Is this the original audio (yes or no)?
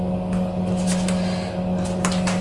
yes